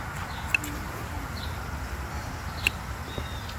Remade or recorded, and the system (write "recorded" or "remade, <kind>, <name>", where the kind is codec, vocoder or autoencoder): recorded